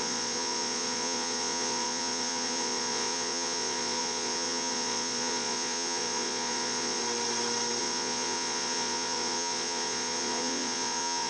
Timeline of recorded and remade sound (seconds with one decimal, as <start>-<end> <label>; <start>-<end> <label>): 0.0-7.0 remade; 7.0-7.8 recorded; 7.8-11.3 remade